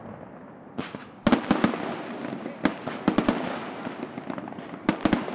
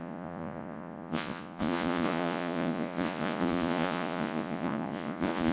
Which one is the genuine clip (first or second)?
first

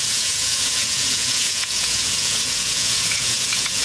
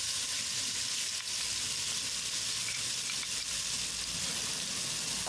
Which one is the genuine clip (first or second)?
second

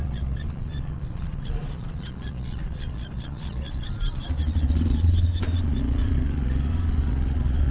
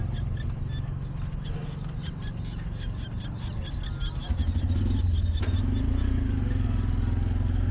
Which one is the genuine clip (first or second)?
second